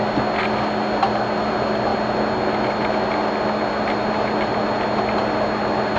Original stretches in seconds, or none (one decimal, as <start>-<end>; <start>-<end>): 0.0-6.0